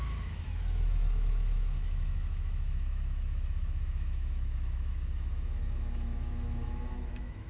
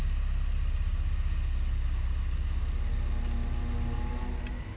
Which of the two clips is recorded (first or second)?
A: second